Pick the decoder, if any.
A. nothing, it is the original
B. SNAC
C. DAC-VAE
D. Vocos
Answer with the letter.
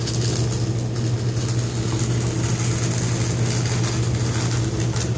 A